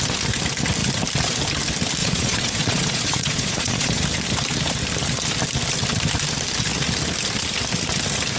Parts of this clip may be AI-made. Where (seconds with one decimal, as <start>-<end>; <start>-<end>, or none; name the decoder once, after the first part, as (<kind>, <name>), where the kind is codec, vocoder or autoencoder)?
2.0-4.0 (vocoder, Vocos)